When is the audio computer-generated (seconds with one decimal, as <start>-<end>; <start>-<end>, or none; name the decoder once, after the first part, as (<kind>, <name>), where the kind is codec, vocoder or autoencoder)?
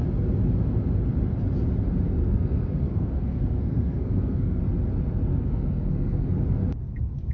2.2-4.6 (codec, SNAC); 5.3-6.4